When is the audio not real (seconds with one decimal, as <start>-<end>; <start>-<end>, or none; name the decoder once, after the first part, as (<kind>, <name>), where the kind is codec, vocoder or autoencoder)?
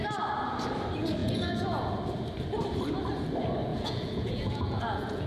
1.2-2.0 (vocoder, Vocos); 3.7-5.3